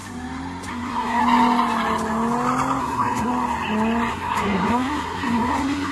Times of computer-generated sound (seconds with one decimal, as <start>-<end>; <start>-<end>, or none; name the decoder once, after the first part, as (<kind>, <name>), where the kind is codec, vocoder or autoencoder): 0.7-1.2 (codec, SNAC); 2.8-3.3; 4.1-5.9